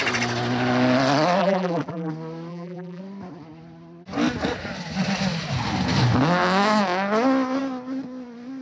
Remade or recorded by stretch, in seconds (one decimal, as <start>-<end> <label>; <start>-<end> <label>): 0.0-1.4 recorded; 1.4-2.1 remade; 2.1-2.5 recorded; 2.5-3.0 remade; 3.0-8.6 recorded